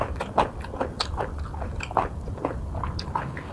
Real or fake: real